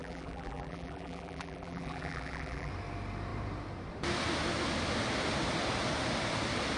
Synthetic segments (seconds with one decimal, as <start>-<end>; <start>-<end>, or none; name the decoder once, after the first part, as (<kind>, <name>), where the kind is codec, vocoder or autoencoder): 0.0-2.7 (vocoder, BigVGAN v2)